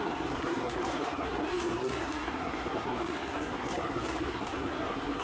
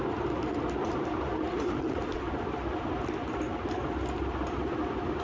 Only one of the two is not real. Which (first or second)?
first